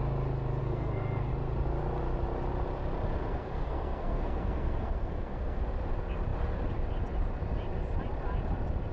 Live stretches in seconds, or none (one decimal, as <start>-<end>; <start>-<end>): 0.0-0.6; 1.3-3.2; 5.6-8.9

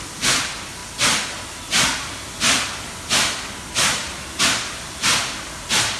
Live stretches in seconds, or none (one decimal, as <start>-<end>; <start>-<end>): 0.0-6.0

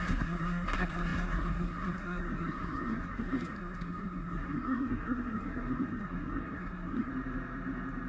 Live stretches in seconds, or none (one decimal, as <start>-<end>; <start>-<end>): 7.1-8.1

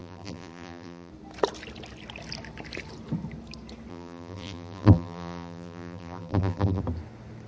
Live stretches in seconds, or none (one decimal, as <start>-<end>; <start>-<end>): 1.1-3.9; 6.8-7.5

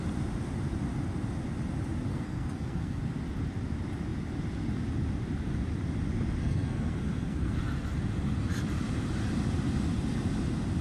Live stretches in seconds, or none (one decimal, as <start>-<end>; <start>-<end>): 0.0-2.1; 3.0-6.4; 7.6-10.8

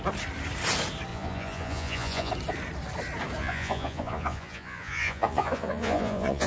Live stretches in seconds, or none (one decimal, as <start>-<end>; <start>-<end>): 0.0-1.1; 2.3-3.4

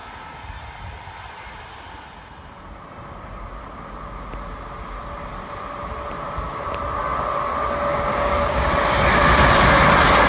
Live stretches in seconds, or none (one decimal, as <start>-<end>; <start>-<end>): 0.0-7.9; 8.7-10.3